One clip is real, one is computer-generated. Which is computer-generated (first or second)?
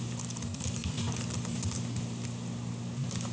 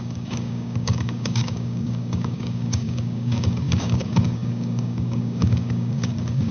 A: second